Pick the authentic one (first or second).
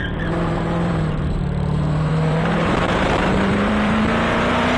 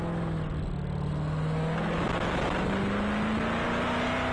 second